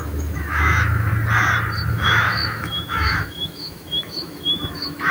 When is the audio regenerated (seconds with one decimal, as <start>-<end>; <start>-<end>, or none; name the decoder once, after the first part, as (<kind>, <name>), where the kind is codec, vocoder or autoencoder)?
0.0-1.1 (autoencoder, DAC-VAE); 1.9-5.1